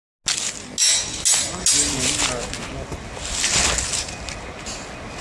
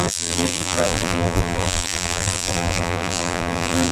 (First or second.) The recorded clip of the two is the first